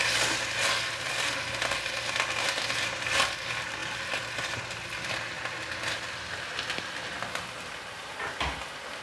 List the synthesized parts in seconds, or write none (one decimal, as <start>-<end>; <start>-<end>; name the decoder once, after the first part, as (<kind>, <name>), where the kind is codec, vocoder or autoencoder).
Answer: none